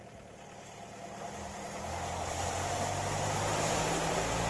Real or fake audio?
fake